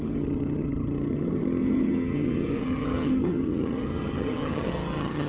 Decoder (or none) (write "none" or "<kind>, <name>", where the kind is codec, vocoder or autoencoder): vocoder, HiFi-GAN